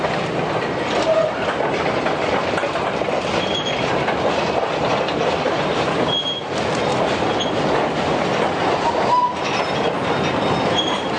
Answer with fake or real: real